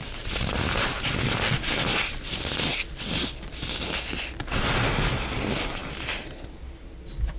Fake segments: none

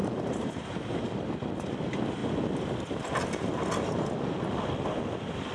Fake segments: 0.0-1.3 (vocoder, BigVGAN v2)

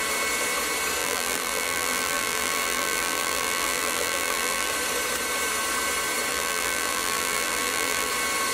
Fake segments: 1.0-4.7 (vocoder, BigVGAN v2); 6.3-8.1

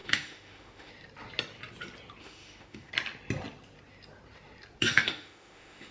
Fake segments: 0.0-0.9 (autoencoder, DAC-VAE); 2.2-2.9; 4.8-5.9

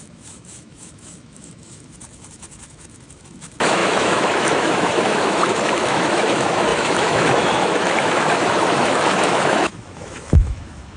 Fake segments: 0.0-11.0 (autoencoder, DAC-VAE)